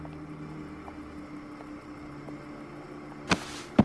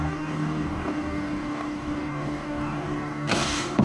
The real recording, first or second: first